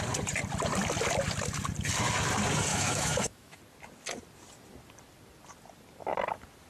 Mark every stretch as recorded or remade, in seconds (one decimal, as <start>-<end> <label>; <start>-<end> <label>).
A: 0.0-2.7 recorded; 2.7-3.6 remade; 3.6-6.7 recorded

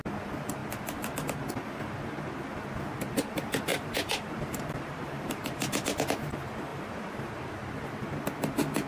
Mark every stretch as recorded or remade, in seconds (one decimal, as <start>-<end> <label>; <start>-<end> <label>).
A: 0.0-3.7 recorded; 3.7-5.7 remade; 5.7-6.7 recorded; 6.7-7.3 remade; 7.3-8.9 recorded

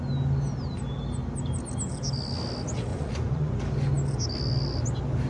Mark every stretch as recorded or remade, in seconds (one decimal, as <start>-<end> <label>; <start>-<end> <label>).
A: 0.0-2.9 recorded; 2.9-3.5 remade; 3.5-5.3 recorded